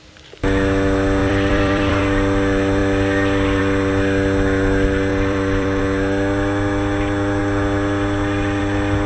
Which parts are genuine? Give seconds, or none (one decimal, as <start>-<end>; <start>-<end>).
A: 0.0-1.2; 2.0-5.1; 5.8-9.1